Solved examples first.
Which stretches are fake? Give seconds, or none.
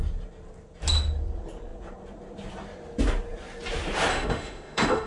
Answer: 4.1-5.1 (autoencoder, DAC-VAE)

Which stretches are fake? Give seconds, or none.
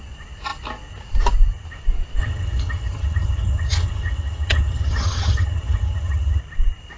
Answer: 2.2-6.4 (vocoder, HiFi-GAN)